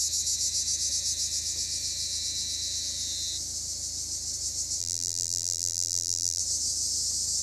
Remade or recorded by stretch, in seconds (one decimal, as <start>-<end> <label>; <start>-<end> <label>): 0.0-4.8 recorded; 4.8-6.4 remade; 6.4-7.4 recorded